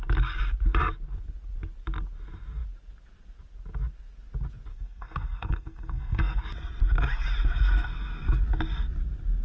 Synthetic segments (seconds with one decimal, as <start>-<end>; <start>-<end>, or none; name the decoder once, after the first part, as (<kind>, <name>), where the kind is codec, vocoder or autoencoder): 4.7-6.4 (codec, SNAC)